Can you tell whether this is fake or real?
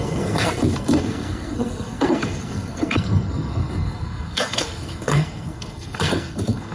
fake